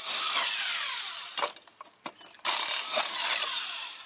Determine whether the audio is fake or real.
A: real